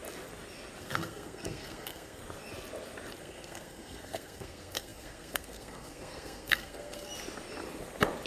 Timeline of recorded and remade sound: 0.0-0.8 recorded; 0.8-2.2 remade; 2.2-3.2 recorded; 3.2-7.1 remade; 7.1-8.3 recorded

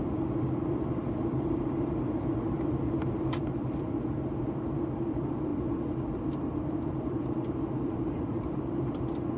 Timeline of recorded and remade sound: 0.0-9.4 remade